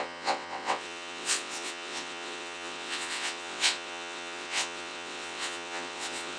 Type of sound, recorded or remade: remade